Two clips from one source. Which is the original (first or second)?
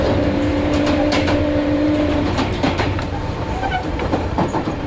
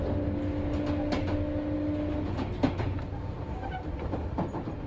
second